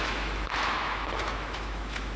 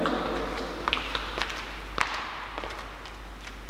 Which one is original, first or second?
second